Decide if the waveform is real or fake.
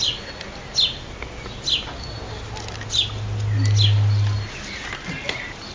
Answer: real